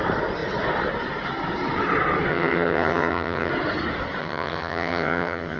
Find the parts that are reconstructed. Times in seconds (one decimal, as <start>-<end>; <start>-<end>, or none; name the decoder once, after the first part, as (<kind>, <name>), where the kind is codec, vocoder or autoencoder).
2.3-3.5 (vocoder, HiFi-GAN); 4.2-5.6